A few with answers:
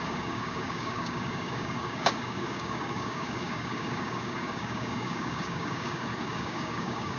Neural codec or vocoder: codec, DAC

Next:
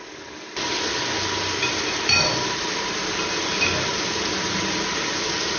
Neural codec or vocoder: none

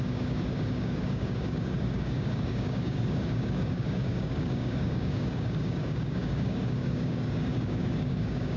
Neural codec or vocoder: codec, DAC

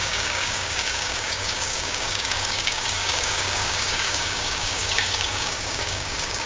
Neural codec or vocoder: codec, DAC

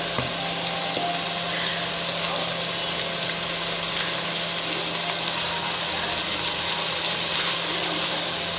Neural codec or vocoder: none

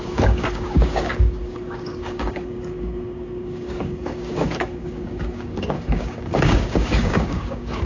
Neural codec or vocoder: codec, DAC